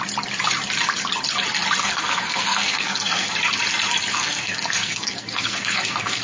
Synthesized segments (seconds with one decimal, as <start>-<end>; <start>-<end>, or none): 1.8-3.3; 4.1-6.2